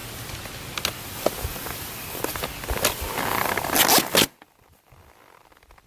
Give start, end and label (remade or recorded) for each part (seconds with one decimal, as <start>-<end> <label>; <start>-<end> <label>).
0.0-5.9 recorded

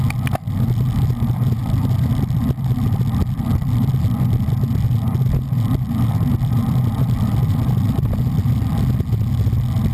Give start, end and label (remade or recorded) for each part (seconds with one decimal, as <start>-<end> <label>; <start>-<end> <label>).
0.0-9.9 recorded

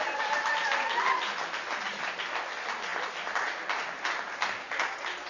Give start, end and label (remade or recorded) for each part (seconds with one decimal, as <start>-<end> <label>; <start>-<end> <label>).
0.0-5.3 recorded

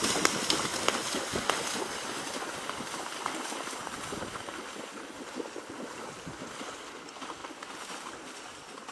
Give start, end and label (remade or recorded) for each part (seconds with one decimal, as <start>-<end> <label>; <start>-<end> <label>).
0.0-0.7 remade; 0.7-2.9 recorded; 2.9-3.8 remade; 3.8-6.4 recorded; 6.4-7.4 remade; 7.4-8.1 recorded; 8.1-8.9 remade

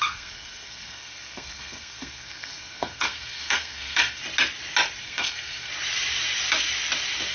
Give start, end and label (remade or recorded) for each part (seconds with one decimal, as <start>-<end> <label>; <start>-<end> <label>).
0.0-4.2 remade; 4.2-5.0 recorded; 5.0-5.7 remade; 5.7-7.3 recorded

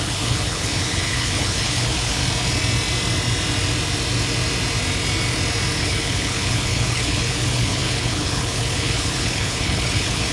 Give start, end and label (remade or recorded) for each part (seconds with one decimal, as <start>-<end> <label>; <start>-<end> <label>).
0.0-2.2 remade; 2.2-5.8 recorded; 5.8-10.3 remade

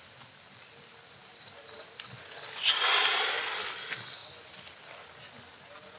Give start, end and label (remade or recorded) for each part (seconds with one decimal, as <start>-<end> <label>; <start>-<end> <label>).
0.0-1.2 recorded; 1.2-3.4 remade; 3.4-4.2 recorded; 4.2-5.1 remade; 5.1-6.0 recorded